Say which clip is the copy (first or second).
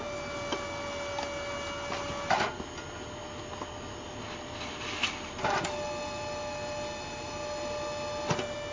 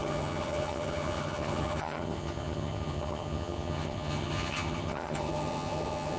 second